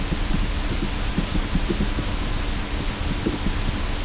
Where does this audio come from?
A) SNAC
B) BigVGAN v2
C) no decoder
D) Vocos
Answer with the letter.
C